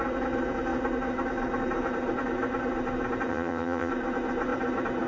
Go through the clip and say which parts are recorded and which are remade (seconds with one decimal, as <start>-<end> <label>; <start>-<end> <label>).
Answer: 0.0-3.3 recorded; 3.3-3.9 remade; 3.9-5.1 recorded